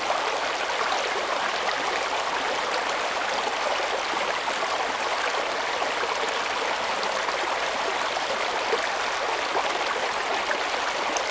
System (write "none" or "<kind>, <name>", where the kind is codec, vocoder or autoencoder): none